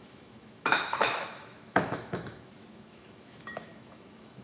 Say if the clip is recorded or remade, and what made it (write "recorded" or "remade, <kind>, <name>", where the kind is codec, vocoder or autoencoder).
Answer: remade, autoencoder, DAC-VAE